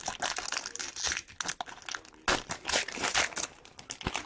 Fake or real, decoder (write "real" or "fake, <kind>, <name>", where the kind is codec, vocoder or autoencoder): real